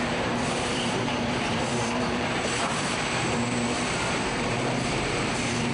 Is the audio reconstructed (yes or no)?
yes